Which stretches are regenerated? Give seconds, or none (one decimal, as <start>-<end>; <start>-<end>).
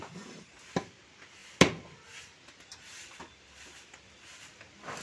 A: none